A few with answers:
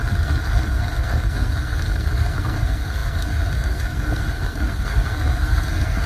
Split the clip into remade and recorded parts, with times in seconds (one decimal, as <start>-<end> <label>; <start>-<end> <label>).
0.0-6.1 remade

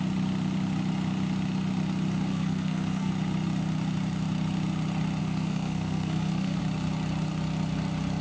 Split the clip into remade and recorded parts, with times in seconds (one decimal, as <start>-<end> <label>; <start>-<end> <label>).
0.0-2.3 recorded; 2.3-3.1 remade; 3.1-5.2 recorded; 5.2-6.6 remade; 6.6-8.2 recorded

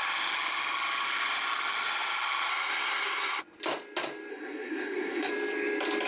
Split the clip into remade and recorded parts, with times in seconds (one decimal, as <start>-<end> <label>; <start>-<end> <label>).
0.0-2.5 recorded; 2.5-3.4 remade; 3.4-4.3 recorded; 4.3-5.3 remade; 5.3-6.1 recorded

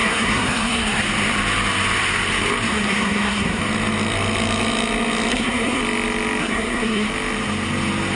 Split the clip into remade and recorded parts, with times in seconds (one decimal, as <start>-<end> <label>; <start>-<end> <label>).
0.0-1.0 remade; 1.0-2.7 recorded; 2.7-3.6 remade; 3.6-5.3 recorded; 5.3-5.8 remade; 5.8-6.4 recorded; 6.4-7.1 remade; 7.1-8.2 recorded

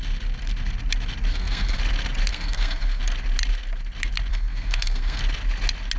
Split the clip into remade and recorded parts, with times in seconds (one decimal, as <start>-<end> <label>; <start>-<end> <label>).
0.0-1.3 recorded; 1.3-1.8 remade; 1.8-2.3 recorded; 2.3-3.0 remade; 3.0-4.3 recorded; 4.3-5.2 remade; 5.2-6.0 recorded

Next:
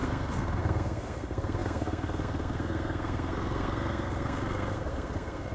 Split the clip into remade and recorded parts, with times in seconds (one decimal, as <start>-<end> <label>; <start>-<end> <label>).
0.0-5.5 remade

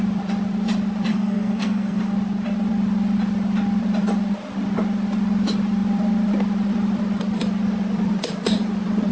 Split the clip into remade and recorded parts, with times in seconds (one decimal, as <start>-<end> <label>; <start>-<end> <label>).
0.0-1.1 recorded; 1.1-2.0 remade; 2.0-9.1 recorded